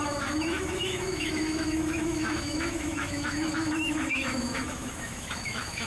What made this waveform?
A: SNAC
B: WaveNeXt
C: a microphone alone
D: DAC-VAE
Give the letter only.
D